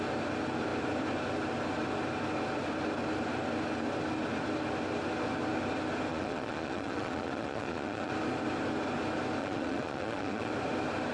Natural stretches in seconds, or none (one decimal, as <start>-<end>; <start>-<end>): 0.0-6.1; 8.1-9.4; 10.5-11.1